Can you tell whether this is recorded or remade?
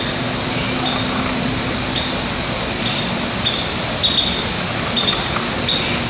recorded